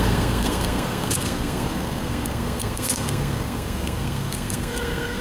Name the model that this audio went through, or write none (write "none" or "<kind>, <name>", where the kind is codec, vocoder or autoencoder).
codec, SNAC